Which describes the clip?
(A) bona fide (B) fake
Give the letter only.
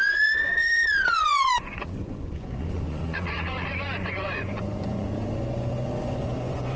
B